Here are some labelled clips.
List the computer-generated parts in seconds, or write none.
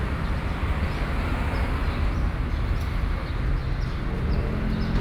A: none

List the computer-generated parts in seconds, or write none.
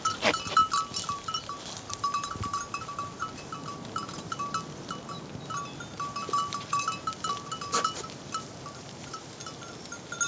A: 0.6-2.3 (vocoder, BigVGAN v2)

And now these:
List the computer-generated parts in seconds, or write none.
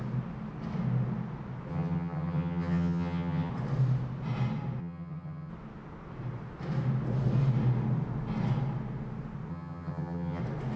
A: 1.7-3.5 (vocoder, HiFi-GAN); 4.8-5.5; 9.5-10.4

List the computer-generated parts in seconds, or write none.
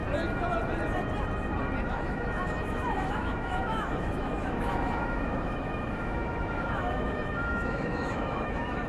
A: 1.9-8.9 (autoencoder, DAC-VAE)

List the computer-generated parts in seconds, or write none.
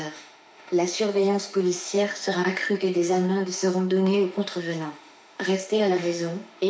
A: 0.0-6.7 (autoencoder, DAC-VAE)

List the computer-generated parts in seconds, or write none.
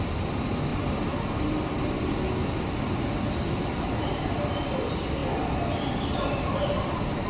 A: none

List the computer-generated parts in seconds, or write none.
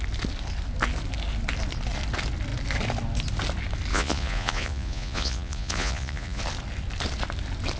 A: 3.9-6.4 (vocoder, Vocos)